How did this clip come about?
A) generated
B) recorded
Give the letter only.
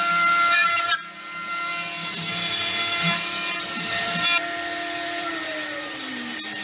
A